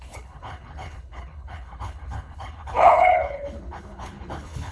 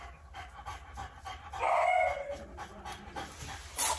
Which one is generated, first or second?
first